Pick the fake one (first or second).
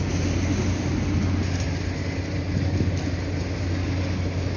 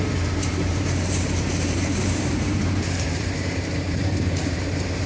second